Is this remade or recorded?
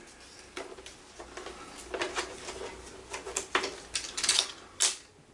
recorded